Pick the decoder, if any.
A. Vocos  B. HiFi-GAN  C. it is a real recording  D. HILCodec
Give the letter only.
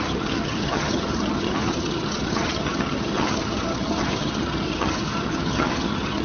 B